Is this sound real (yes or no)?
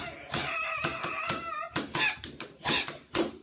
no